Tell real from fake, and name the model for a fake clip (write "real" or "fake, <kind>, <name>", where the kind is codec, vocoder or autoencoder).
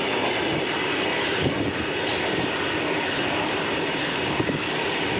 real